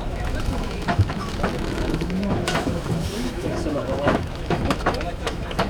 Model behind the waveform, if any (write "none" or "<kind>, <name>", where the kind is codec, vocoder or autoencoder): autoencoder, DAC-VAE